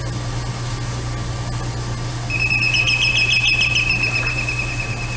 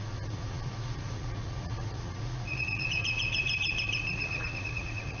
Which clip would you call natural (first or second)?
first